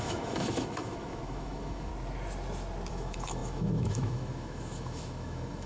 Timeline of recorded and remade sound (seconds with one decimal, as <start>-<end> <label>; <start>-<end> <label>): 0.0-1.9 remade; 1.9-2.9 recorded; 2.9-5.7 remade